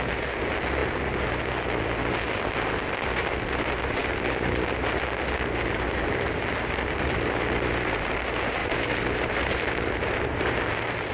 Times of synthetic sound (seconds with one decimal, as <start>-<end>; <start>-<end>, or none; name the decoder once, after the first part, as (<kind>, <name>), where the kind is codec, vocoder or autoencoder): 8.6-10.6 (vocoder, BigVGAN v2)